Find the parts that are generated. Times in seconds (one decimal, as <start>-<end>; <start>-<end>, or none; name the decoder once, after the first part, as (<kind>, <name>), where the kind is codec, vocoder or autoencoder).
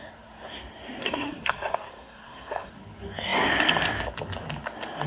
1.0-2.7 (codec, SNAC)